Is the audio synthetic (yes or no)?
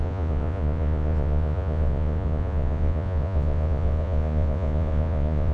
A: yes